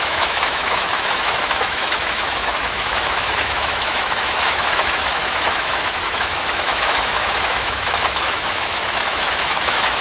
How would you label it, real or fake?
fake